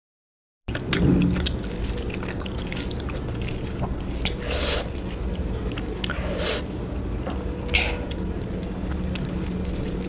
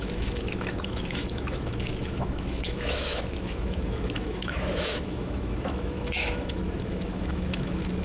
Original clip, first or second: first